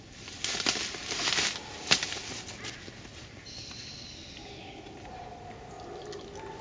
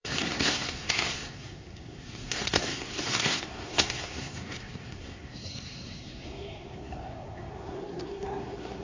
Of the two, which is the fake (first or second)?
second